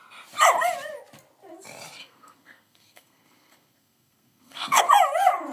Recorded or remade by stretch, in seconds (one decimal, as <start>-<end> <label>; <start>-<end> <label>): 0.0-2.0 recorded; 2.0-4.8 remade; 4.8-5.5 recorded